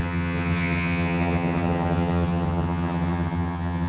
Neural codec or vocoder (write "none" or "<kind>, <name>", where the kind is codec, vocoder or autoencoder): vocoder, HiFi-GAN